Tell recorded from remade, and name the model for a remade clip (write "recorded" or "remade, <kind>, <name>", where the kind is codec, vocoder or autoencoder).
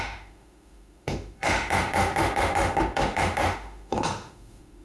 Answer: remade, autoencoder, DAC-VAE